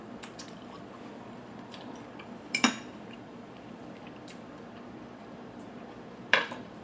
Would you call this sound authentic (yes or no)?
no